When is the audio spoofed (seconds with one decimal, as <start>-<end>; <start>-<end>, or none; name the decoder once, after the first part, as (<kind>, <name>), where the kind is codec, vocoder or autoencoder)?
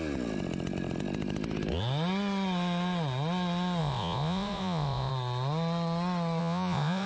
3.8-5.1 (vocoder, Vocos); 6.4-7.1